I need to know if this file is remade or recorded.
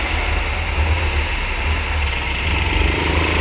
recorded